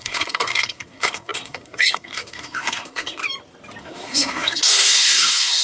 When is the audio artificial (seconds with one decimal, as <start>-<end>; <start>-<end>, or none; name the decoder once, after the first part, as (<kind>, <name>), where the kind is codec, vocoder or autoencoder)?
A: 0.0-3.2 (codec, SNAC); 3.8-5.6